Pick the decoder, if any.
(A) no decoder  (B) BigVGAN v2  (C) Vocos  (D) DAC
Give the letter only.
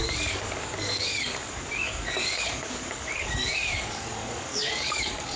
D